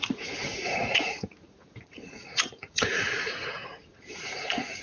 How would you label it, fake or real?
fake